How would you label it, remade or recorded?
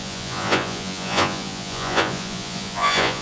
remade